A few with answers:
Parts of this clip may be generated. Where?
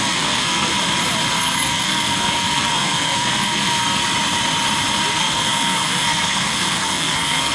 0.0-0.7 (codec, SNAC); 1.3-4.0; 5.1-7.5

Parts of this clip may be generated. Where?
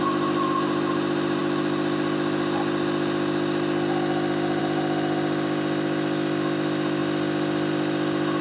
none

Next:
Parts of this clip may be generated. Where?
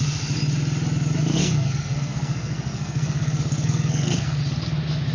1.3-4.4 (codec, SNAC)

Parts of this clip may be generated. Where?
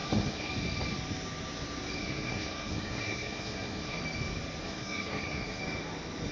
0.0-0.5 (codec, SNAC); 2.0-4.0; 4.6-5.6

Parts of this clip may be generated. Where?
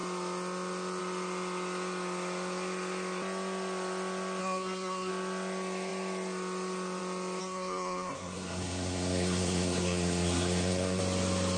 4.4-5.1 (codec, SNAC); 7.4-11.0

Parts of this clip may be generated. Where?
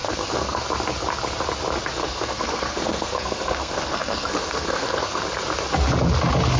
0.0-0.6 (codec, SNAC); 2.0-5.2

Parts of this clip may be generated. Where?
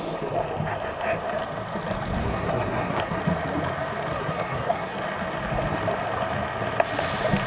2.2-3.2 (codec, SNAC); 4.1-5.0